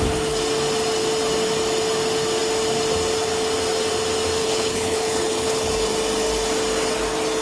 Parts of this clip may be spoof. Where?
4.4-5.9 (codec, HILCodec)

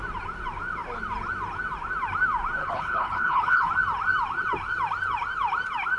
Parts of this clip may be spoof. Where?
2.6-3.7 (codec, HILCodec)

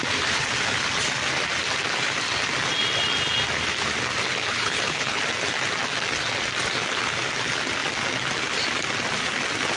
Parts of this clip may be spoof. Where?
4.5-5.2 (codec, HILCodec)

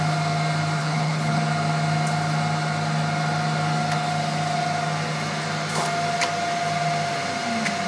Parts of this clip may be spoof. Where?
0.8-1.4 (codec, HILCodec)

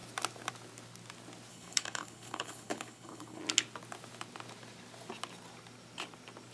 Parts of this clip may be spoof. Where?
1.5-3.4 (codec, HILCodec)

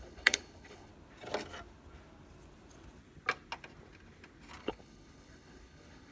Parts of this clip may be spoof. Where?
0.0-0.9 (codec, HILCodec); 4.6-6.1

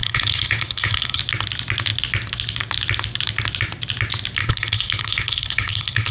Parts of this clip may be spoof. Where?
0.0-1.2 (codec, HILCodec); 4.4-6.1

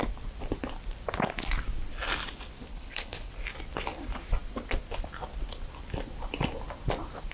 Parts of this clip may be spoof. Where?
2.7-3.3 (codec, HILCodec)